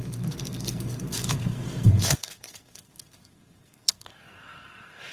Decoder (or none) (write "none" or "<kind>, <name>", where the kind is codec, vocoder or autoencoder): codec, SNAC